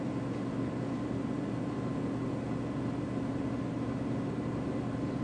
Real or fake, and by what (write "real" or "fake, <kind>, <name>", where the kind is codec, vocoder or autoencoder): real